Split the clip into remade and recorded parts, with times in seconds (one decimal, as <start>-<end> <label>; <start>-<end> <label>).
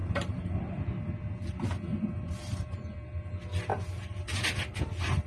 0.0-0.7 remade; 0.7-1.9 recorded; 1.9-3.2 remade; 3.2-3.7 recorded; 3.7-4.4 remade; 4.4-5.3 recorded